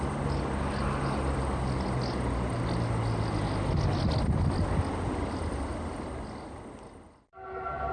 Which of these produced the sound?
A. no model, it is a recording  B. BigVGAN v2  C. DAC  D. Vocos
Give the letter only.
A